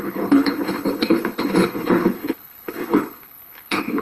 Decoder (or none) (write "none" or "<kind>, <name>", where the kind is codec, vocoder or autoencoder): codec, HILCodec